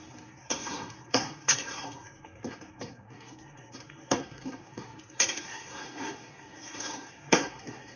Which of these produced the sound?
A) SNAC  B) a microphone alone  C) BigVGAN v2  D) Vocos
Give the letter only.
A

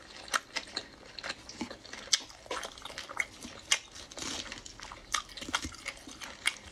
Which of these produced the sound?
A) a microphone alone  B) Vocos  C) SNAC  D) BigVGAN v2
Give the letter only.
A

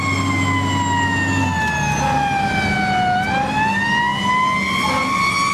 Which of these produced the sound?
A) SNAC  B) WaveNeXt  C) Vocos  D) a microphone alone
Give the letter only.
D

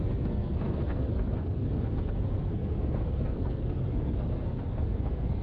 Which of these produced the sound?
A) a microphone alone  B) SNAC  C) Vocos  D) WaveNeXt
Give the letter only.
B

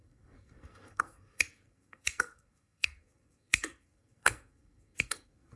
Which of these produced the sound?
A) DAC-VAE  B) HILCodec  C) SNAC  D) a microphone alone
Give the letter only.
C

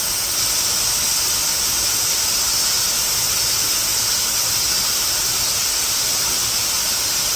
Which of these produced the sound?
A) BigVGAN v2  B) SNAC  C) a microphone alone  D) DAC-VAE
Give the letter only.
C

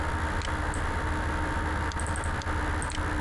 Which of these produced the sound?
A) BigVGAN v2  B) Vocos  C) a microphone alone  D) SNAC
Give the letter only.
C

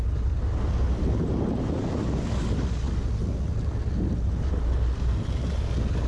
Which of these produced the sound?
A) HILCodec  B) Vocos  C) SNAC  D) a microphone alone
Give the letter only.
D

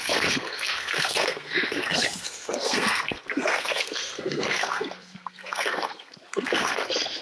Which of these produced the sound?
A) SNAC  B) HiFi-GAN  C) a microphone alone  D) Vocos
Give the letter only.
A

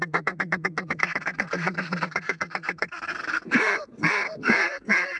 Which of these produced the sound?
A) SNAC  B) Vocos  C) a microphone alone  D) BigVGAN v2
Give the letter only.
A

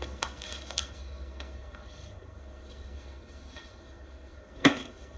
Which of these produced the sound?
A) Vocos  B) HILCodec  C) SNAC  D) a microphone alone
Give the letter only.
C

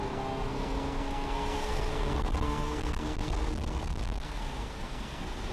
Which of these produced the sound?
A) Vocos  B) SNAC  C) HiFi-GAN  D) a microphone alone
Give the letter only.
B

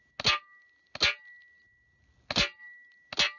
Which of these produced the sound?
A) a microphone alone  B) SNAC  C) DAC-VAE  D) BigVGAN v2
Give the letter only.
A